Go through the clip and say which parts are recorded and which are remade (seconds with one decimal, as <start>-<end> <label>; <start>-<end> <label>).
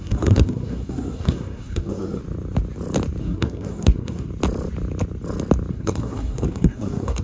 0.0-2.2 remade; 2.2-3.2 recorded; 3.2-4.3 remade; 4.3-5.7 recorded; 5.7-7.2 remade